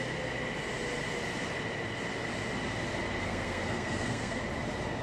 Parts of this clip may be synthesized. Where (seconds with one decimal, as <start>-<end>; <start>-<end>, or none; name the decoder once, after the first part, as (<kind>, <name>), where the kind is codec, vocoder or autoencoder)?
3.2-4.4 (codec, SNAC)